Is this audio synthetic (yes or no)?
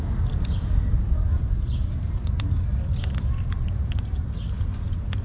no